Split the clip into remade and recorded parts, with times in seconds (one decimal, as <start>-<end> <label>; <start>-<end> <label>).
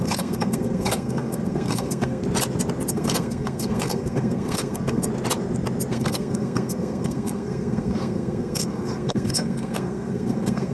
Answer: 0.0-2.2 remade; 2.2-2.9 recorded; 2.9-5.1 remade; 5.1-5.9 recorded; 5.9-10.7 remade